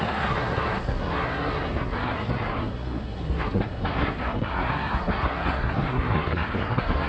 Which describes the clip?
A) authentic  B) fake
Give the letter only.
B